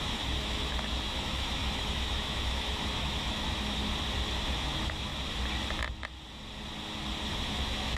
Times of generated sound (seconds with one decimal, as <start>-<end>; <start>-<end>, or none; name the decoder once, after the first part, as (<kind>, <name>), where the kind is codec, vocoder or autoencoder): 0.0-3.8 (autoencoder, DAC-VAE); 4.5-5.1; 7.3-8.0

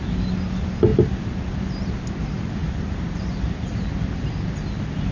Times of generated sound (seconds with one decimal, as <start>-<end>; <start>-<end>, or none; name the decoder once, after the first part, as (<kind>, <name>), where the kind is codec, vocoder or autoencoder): 2.6-4.0 (vocoder, BigVGAN v2)

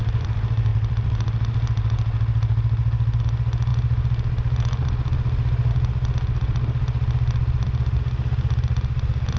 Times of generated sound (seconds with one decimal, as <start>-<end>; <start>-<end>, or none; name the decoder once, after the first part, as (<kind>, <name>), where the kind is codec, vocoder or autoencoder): none

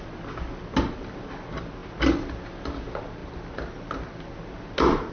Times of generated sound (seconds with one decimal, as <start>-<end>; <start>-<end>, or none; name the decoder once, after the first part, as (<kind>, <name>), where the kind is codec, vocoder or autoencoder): none

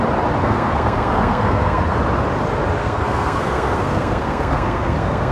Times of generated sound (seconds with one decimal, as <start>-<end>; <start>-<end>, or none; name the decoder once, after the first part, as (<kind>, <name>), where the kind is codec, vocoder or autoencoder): 0.4-2.0 (codec, SNAC); 2.8-5.3

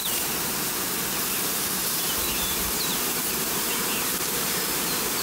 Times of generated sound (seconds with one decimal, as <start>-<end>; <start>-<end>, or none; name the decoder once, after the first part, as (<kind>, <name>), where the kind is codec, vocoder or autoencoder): 1.8-5.2 (vocoder, BigVGAN v2)

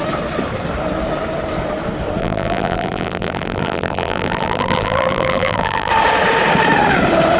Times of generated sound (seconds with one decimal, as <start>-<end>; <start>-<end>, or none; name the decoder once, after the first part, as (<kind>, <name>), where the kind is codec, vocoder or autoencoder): 2.2-5.9 (vocoder, BigVGAN v2)